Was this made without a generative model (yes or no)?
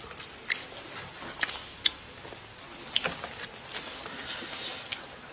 yes